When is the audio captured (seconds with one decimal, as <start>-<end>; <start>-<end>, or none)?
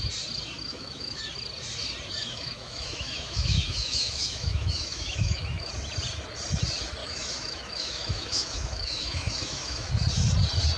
0.0-0.7; 1.2-2.2; 5.7-7.0; 9.9-10.8